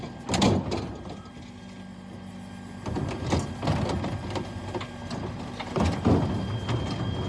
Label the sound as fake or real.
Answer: real